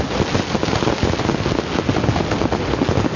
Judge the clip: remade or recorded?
recorded